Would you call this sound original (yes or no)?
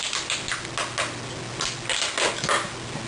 yes